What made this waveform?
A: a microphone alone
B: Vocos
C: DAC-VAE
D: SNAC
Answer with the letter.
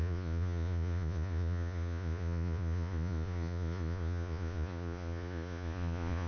B